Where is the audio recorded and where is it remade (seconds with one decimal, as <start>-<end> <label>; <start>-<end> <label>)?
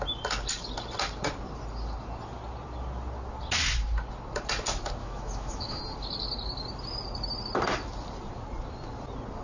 0.0-5.0 recorded; 5.0-5.8 remade; 5.8-9.4 recorded